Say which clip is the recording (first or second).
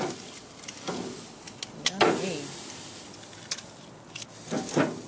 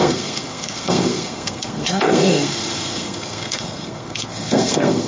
first